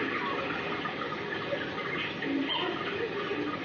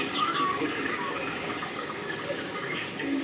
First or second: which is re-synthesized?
second